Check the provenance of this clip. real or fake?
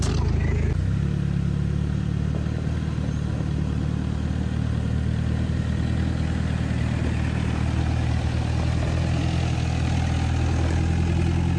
real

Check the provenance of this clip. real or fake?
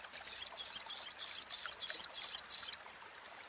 fake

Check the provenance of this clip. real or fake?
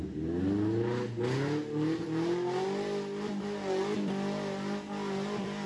real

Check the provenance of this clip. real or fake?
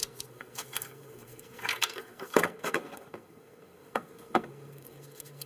fake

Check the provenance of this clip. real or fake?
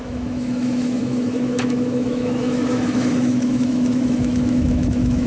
fake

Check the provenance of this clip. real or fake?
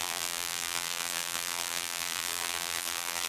fake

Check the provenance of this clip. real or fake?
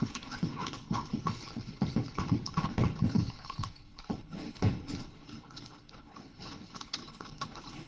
fake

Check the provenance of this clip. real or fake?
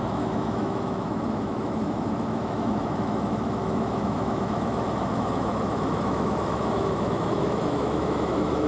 fake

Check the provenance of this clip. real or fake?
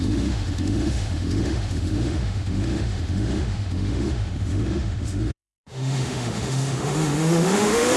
fake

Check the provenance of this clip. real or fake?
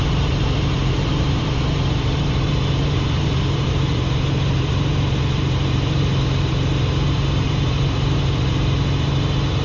fake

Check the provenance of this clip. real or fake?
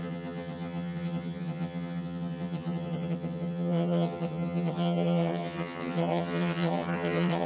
fake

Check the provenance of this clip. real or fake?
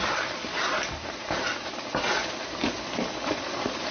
real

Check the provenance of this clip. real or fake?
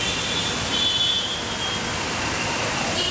fake